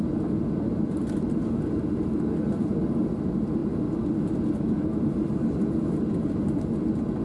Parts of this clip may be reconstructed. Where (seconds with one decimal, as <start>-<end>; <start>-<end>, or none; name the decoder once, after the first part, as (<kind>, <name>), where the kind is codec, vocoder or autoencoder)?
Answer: none